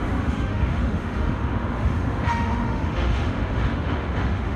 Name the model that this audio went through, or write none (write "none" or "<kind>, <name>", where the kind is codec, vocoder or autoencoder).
autoencoder, DAC-VAE